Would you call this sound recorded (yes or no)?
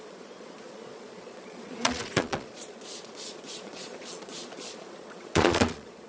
no